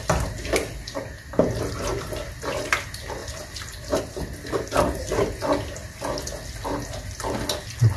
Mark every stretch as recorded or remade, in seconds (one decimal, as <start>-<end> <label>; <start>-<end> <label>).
0.0-8.0 recorded